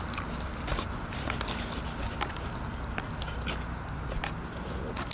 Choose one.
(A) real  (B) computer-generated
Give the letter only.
A